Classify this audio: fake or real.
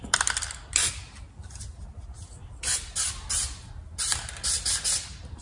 real